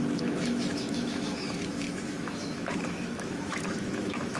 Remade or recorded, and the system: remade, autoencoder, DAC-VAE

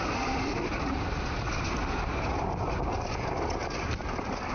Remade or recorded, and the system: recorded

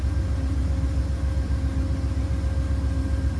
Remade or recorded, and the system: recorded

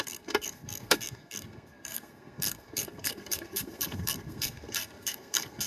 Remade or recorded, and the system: remade, codec, SNAC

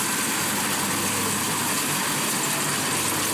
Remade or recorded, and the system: recorded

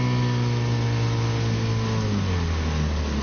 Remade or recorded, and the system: recorded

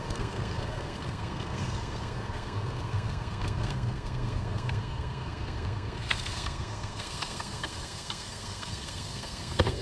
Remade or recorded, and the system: remade, codec, SNAC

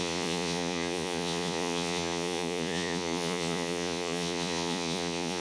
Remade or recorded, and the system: remade, vocoder, Vocos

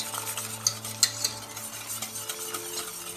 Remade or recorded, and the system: recorded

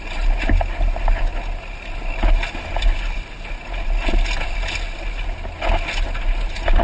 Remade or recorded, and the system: recorded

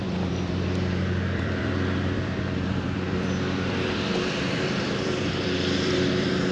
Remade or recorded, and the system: remade, vocoder, BigVGAN v2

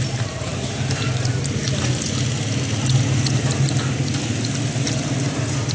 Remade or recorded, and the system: recorded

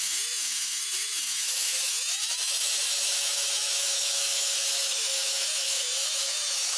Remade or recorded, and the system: remade, autoencoder, DAC-VAE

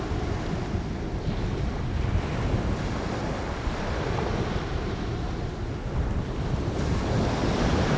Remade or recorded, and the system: recorded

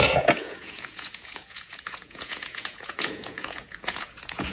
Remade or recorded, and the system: remade, vocoder, Vocos